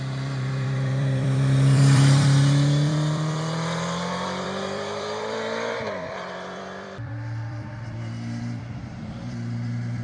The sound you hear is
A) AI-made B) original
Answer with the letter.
A